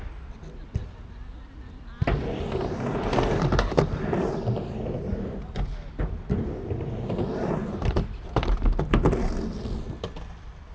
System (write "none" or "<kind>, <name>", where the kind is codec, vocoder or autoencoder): none